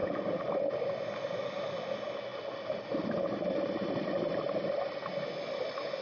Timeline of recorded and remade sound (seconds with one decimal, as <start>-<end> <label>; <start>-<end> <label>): 0.0-6.0 recorded